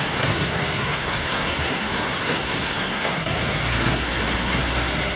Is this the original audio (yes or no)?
no